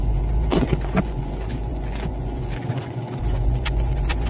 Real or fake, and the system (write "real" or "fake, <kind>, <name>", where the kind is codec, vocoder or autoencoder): fake, vocoder, Vocos